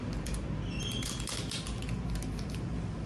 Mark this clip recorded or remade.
recorded